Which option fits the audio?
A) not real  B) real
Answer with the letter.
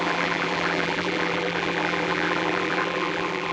A